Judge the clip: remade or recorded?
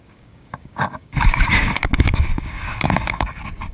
remade